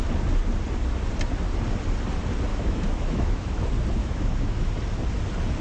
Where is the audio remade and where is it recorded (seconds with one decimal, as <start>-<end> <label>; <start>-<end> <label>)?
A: 0.0-2.5 recorded; 2.5-3.6 remade; 3.6-4.0 recorded; 4.0-4.6 remade; 4.6-5.6 recorded